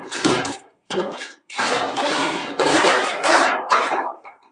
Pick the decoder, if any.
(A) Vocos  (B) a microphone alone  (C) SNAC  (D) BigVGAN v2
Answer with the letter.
C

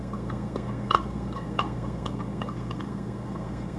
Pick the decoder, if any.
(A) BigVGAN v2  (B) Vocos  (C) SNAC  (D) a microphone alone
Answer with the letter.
C